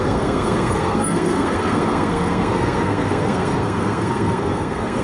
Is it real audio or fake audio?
fake